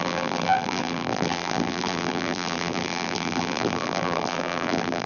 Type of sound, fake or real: fake